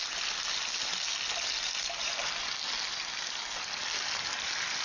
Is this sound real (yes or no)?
yes